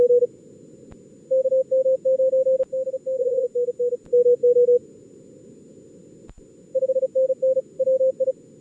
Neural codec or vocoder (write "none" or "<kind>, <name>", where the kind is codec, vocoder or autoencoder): none